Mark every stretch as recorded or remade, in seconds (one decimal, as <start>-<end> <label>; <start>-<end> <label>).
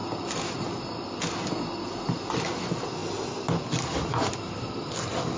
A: 0.0-5.4 recorded